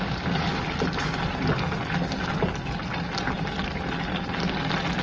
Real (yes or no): yes